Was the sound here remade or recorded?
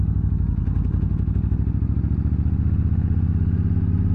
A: recorded